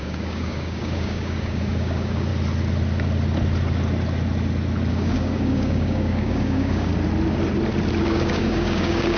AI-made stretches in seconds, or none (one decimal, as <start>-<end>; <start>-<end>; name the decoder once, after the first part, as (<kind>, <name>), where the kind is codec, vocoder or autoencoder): 0.0-2.3 (codec, DAC); 4.9-6.9; 8.0-9.2